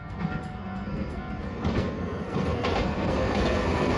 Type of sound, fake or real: fake